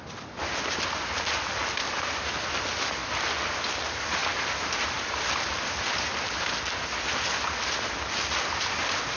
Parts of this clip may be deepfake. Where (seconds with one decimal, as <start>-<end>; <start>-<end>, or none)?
none